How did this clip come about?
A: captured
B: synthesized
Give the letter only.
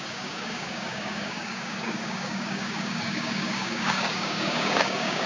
B